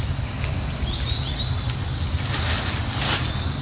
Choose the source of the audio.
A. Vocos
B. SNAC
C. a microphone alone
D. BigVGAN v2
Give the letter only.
C